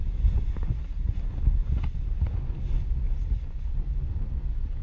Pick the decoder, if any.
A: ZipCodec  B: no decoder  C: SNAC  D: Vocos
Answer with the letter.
B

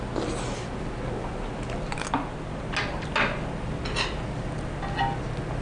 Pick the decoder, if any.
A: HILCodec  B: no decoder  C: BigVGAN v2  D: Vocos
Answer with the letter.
B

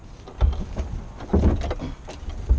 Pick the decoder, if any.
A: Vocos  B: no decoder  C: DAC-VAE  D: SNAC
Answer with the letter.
B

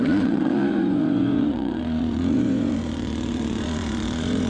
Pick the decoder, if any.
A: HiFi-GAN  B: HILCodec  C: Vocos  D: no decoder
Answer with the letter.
C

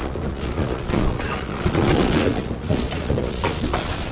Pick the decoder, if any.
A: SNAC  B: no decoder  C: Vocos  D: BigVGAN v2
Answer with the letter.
C